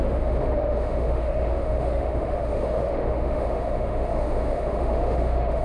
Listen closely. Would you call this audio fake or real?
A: fake